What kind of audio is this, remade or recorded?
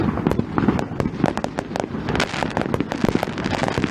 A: recorded